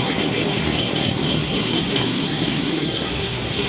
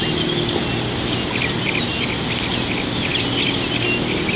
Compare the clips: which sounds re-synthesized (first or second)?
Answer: first